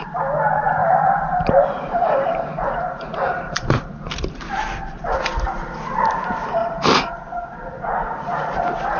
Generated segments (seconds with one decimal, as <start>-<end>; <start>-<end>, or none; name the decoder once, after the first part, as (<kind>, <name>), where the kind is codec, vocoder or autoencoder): 0.8-4.5 (vocoder, BigVGAN v2); 6.6-7.1